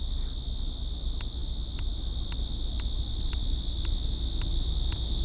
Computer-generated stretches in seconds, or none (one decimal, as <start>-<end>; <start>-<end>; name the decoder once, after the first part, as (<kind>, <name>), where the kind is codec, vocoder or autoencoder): none